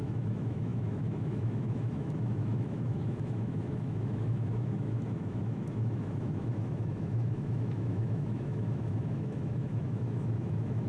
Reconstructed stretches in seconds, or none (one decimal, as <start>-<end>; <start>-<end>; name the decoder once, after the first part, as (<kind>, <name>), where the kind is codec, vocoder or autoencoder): 0.0-10.9 (autoencoder, DAC-VAE)